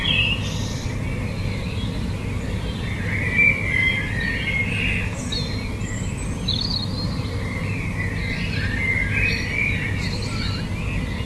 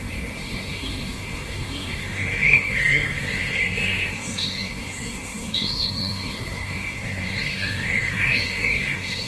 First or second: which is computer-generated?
second